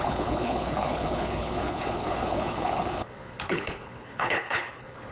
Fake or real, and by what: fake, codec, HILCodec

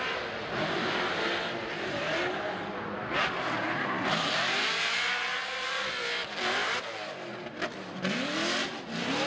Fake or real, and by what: real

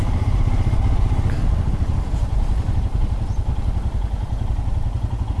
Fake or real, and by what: real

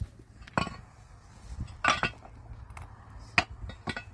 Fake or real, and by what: real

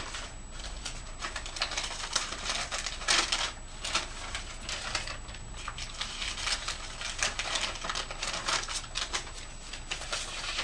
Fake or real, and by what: real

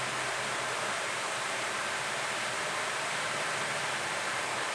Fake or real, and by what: real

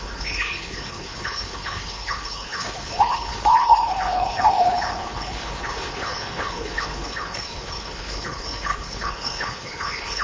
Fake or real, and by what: fake, codec, HILCodec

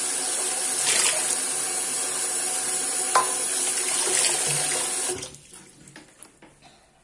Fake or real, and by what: real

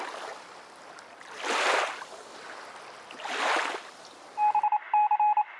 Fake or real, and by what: real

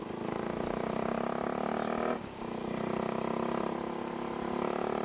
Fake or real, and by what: real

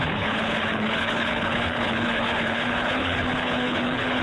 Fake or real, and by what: fake, codec, HILCodec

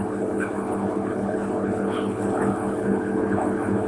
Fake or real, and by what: fake, codec, HILCodec